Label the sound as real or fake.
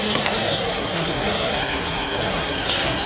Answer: fake